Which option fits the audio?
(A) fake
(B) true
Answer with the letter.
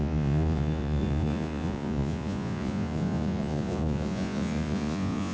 A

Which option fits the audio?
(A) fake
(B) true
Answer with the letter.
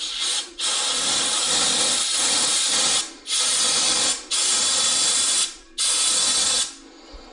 B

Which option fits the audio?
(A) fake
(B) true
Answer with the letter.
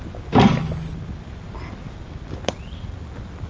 B